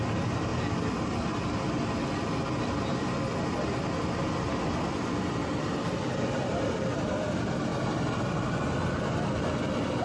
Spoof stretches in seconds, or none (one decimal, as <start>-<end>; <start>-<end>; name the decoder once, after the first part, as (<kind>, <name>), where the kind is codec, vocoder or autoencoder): 0.0-0.5 (vocoder, BigVGAN v2); 5.0-10.0